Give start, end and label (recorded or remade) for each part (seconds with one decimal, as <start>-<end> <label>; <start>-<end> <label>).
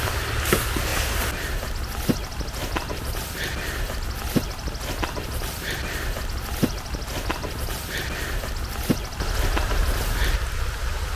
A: 0.0-11.2 recorded